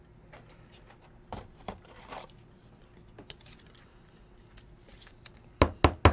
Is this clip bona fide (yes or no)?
yes